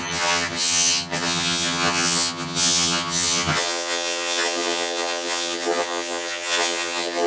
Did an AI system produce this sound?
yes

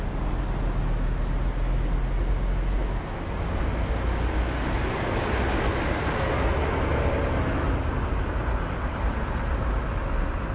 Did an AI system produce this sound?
no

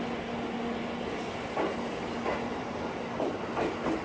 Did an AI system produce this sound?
no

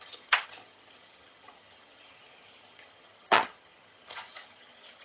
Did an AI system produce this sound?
yes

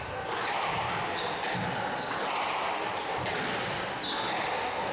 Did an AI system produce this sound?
no